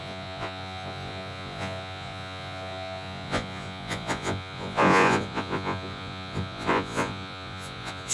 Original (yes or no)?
no